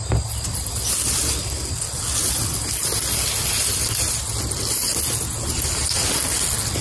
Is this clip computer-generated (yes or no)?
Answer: no